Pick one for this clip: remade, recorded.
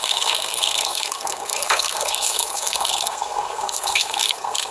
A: remade